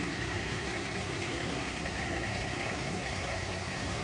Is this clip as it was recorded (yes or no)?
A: no